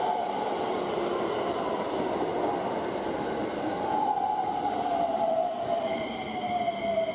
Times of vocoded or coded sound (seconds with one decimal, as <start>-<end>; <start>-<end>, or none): 0.8-1.3; 2.3-6.6